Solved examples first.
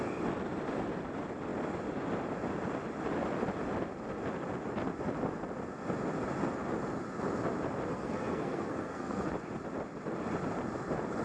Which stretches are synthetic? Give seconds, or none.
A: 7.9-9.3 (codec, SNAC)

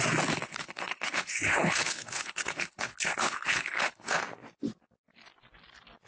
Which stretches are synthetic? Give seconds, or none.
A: 0.5-4.2 (codec, HILCodec)

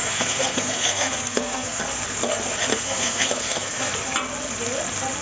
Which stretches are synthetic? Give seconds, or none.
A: 0.0-1.8 (codec, SNAC); 2.7-3.9

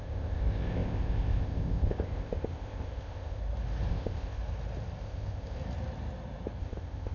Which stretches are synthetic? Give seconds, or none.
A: 0.0-3.4 (codec, ZipCodec); 3.9-4.4; 5.0-5.6; 6.6-7.1

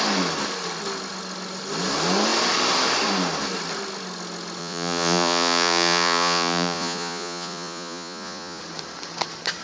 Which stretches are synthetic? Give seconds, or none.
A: 4.6-8.6 (vocoder, Vocos)

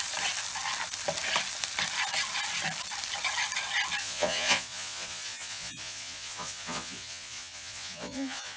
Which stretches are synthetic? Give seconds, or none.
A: 4.0-8.6 (vocoder, Vocos)

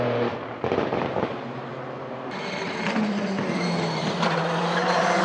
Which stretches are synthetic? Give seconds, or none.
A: 0.0-1.7 (vocoder, BigVGAN v2); 4.6-5.2